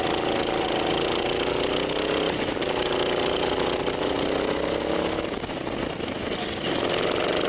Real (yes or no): yes